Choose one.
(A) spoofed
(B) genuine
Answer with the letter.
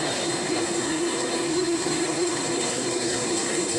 A